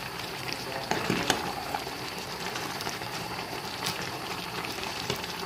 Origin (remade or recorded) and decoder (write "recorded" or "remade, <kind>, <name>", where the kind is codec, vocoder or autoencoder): remade, vocoder, BigVGAN v2